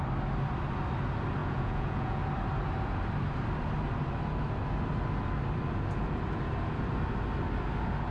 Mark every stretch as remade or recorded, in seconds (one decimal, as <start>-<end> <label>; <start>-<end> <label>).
0.0-1.4 recorded; 1.4-2.2 remade; 2.2-8.1 recorded